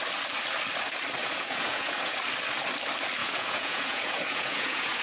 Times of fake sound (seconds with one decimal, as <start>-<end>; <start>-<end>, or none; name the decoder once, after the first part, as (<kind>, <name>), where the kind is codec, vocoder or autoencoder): 1.2-2.2 (vocoder, Vocos); 3.2-5.0